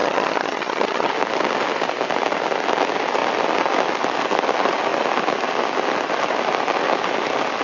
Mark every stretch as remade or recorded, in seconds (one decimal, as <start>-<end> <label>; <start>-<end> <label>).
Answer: 0.0-1.1 remade; 1.1-7.6 recorded